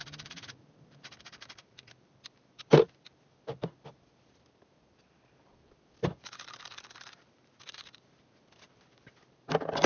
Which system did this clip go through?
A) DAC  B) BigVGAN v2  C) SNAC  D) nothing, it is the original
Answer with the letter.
B